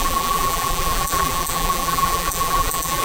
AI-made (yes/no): yes